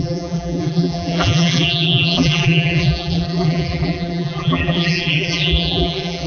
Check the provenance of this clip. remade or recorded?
remade